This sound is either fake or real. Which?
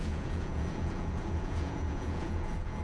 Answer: fake